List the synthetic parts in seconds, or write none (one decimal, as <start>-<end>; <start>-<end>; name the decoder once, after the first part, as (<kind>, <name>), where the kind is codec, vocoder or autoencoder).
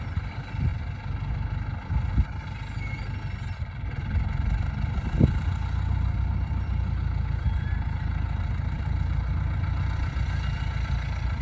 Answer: none